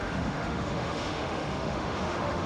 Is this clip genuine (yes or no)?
no